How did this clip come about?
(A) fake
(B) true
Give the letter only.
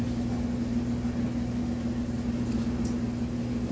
B